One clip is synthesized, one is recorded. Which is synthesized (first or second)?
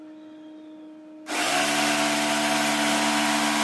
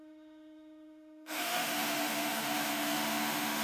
second